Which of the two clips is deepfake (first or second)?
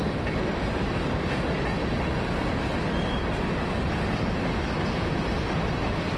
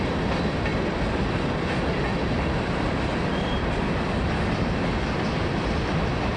second